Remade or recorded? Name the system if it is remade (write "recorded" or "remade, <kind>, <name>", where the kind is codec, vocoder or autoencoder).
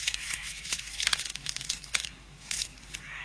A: remade, codec, SNAC